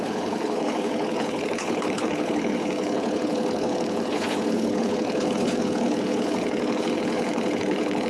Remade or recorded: remade